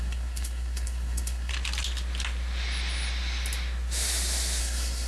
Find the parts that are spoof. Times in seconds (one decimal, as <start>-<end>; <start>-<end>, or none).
0.0-1.5; 4.6-5.1